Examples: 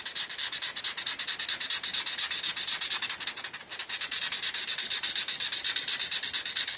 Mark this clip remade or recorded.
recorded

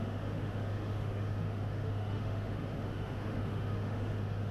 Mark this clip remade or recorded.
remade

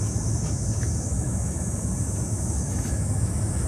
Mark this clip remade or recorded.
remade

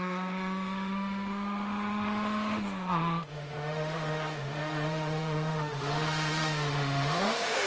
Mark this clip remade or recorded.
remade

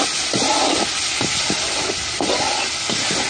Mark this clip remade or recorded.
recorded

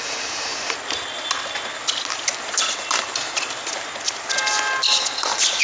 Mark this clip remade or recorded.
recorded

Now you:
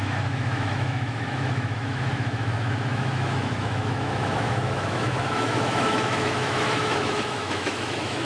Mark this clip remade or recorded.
remade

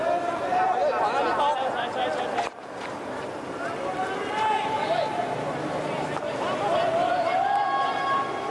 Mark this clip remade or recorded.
recorded